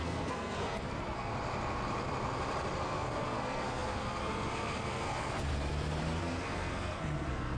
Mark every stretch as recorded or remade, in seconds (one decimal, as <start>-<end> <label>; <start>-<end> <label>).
0.0-1.3 remade; 1.3-2.8 recorded; 2.8-5.5 remade; 5.5-6.2 recorded; 6.2-7.6 remade